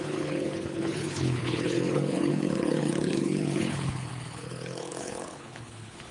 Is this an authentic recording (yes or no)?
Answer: no